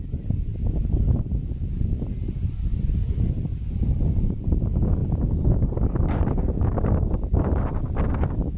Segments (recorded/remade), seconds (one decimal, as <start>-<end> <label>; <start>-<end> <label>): 0.0-8.6 recorded